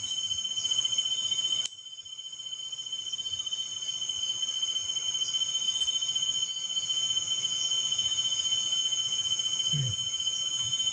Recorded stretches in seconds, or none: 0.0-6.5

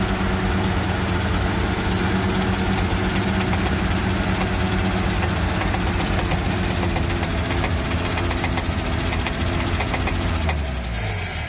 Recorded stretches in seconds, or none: 0.0-11.5

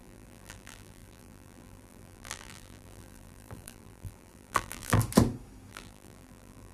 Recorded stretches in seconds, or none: 5.0-5.7

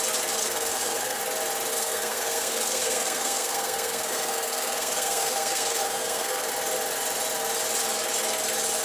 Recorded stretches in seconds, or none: 0.0-0.4; 1.2-1.7; 6.5-8.8

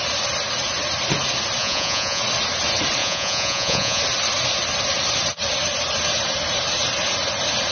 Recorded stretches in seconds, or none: 0.0-1.6; 2.2-3.0; 4.0-7.7